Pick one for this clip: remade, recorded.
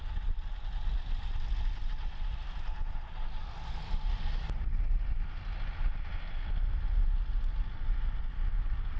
recorded